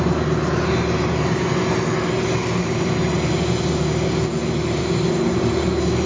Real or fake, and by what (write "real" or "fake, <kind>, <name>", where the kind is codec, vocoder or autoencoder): real